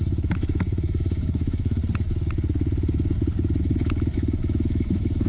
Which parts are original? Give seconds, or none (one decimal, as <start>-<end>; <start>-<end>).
1.8-3.6